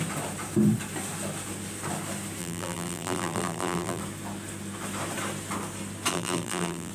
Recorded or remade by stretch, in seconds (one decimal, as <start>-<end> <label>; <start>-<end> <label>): 0.0-2.4 recorded; 2.4-4.0 remade; 4.0-6.1 recorded; 6.1-6.9 remade